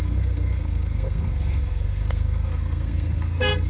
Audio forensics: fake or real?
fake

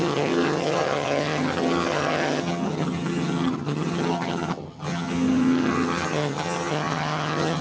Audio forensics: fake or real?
fake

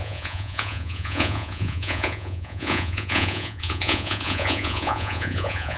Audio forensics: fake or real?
fake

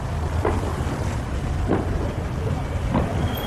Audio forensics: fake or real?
real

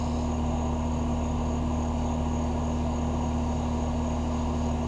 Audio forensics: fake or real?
real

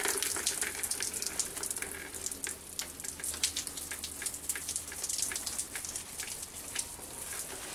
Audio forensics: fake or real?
real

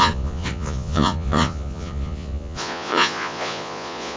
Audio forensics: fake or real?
fake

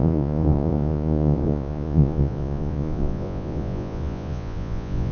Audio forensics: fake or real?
fake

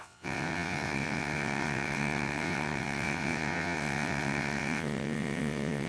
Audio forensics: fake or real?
fake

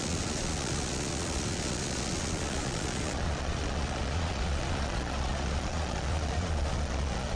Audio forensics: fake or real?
fake